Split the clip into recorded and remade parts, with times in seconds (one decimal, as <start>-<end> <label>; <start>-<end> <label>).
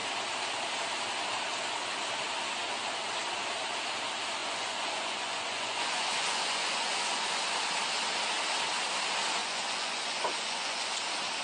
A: 0.0-4.4 recorded; 4.4-7.4 remade; 7.4-9.4 recorded; 9.4-11.0 remade; 11.0-11.4 recorded